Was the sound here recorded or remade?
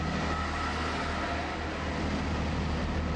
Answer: recorded